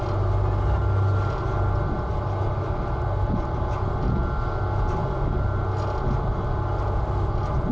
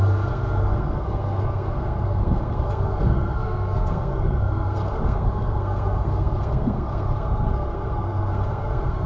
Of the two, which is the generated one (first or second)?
second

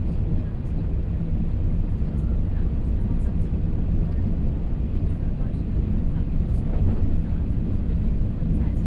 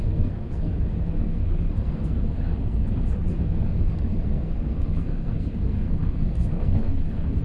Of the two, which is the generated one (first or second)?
second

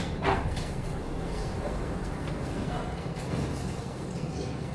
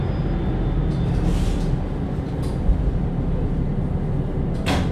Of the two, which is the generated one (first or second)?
first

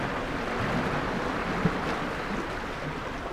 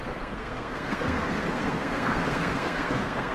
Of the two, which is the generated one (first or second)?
second